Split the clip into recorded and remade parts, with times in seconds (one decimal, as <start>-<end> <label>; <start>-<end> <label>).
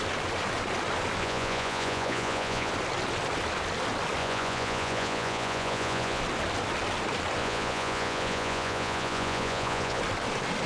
0.0-1.2 recorded; 1.2-2.7 remade; 2.7-4.2 recorded; 4.2-6.2 remade; 6.2-7.4 recorded; 7.4-10.0 remade; 10.0-10.7 recorded